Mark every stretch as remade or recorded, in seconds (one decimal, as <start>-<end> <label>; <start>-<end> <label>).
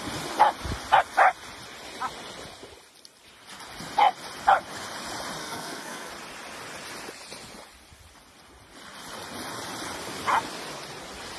0.0-5.4 recorded; 5.4-6.1 remade; 6.1-11.4 recorded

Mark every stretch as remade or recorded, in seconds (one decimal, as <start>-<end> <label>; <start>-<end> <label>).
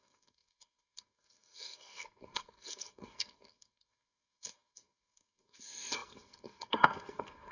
0.0-7.5 remade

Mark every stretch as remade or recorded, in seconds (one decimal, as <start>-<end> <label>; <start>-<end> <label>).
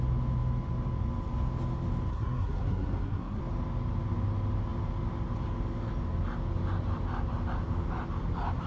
0.0-2.1 recorded; 2.1-3.4 remade; 3.4-8.7 recorded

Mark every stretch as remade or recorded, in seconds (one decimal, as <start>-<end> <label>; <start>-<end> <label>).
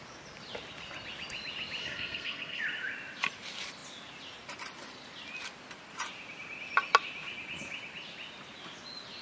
0.0-1.8 recorded; 1.8-2.6 remade; 2.6-9.2 recorded